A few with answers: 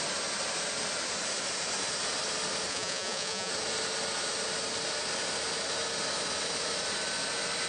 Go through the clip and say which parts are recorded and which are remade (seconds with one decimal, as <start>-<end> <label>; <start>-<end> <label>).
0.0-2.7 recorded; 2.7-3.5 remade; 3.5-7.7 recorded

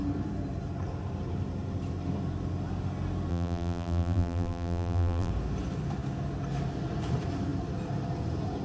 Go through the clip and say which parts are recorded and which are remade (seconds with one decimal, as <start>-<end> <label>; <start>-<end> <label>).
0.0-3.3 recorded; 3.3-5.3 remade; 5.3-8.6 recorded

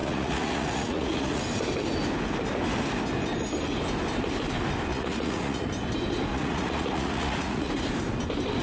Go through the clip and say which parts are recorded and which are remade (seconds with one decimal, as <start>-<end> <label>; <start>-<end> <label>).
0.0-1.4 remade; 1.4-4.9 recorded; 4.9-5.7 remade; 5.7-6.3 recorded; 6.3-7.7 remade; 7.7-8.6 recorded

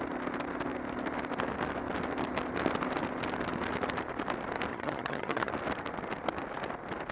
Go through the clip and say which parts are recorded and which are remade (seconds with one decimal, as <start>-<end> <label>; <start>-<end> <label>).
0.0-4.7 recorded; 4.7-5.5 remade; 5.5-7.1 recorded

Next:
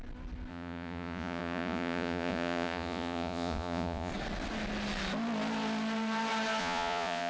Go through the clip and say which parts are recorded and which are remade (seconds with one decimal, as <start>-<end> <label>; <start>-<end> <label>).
0.0-0.5 recorded; 0.5-4.1 remade; 4.1-6.6 recorded; 6.6-7.3 remade